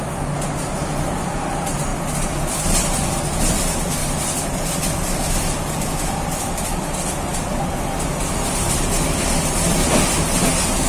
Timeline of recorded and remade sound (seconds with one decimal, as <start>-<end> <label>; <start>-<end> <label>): 0.0-4.0 recorded; 4.0-7.6 remade; 7.6-10.9 recorded